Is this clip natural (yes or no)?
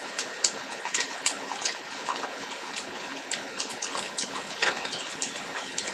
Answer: no